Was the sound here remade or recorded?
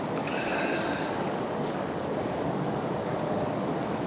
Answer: remade